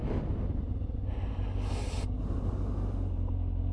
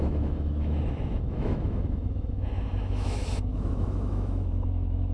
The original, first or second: first